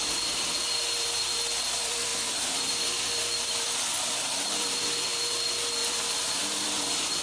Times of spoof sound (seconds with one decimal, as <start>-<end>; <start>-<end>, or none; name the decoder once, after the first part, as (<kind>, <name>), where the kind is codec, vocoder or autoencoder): 0.0-7.2 (vocoder, BigVGAN v2)